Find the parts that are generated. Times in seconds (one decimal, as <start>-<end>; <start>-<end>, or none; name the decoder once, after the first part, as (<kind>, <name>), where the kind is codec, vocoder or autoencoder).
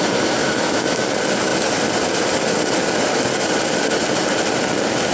0.4-1.0 (autoencoder, DAC-VAE)